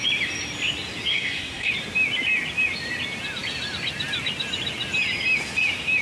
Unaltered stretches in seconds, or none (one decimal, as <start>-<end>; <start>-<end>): 0.0-1.1; 1.7-6.0